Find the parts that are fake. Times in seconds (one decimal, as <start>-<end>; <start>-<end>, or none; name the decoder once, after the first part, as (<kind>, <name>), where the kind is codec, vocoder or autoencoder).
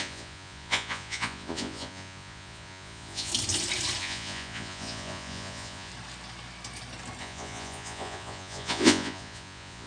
0.0-3.3 (vocoder, Vocos); 4.0-5.9; 7.2-9.9